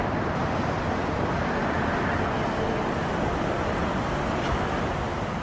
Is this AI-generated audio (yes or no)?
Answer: no